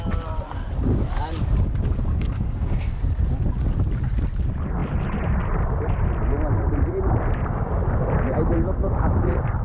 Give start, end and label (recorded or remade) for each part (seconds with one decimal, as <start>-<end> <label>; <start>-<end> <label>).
0.0-2.1 recorded; 2.1-3.0 remade; 3.0-9.6 recorded